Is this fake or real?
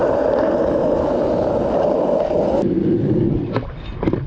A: real